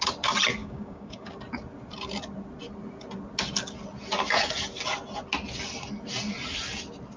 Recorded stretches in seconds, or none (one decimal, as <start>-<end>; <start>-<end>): 0.0-0.6; 1.3-7.2